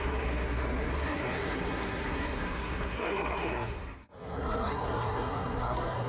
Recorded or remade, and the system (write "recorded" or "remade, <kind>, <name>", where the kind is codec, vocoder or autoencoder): remade, codec, SNAC